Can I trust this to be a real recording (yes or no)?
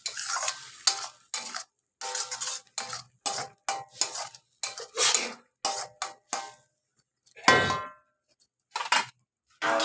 yes